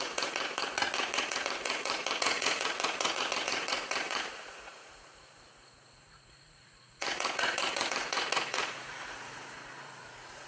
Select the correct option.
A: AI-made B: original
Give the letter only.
A